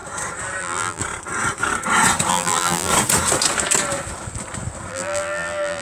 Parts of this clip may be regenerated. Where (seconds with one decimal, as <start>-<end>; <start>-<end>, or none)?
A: 0.6-1.0; 2.3-2.9; 4.9-5.8